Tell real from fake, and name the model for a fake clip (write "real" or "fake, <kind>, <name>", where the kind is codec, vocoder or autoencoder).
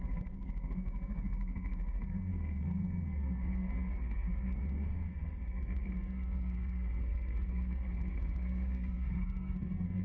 fake, codec, SNAC